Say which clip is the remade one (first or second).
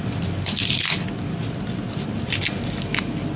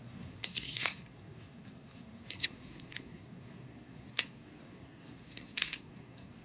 second